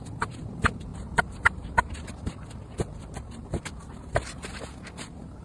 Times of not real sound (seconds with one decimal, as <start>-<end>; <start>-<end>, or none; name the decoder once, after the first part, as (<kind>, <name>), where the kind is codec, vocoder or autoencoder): none